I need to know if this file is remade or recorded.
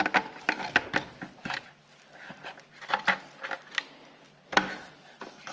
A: recorded